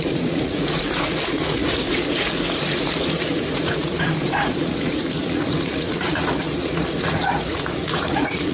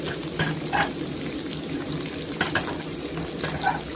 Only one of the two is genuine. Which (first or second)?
second